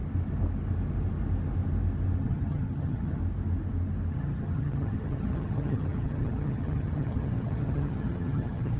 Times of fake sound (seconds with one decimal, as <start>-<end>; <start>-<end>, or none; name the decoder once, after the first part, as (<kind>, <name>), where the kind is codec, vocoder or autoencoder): 2.2-3.2 (vocoder, HiFi-GAN); 4.1-8.8